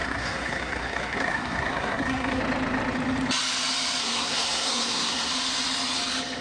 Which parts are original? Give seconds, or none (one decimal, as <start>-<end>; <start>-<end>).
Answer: 2.4-4.0; 5.3-6.4